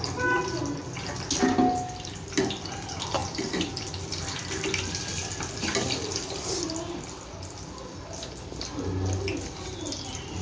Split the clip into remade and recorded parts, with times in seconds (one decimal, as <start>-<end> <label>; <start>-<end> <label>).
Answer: 0.0-10.4 recorded